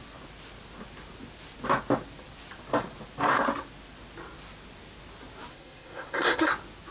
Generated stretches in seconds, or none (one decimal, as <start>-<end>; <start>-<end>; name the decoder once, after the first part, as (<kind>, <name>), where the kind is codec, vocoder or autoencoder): 5.5-6.5 (codec, SNAC)